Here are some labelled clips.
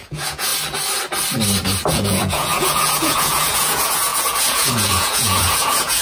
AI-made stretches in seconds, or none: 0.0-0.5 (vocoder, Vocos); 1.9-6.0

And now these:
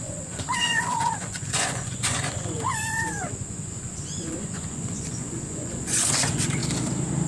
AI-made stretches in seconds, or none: 0.0-6.6 (vocoder, Vocos)

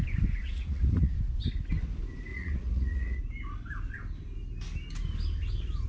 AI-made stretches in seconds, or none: 0.4-1.1 (vocoder, Vocos); 2.3-3.2

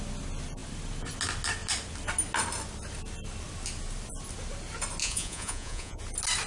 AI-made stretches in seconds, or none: 5.0-6.0 (vocoder, Vocos)

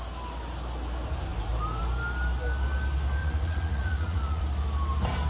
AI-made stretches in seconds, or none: 3.2-4.4 (vocoder, Vocos)

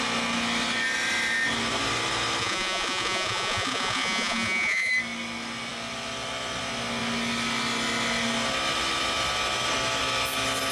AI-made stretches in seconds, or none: 2.4-4.9 (vocoder, Vocos)

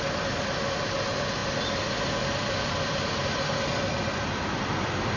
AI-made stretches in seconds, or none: none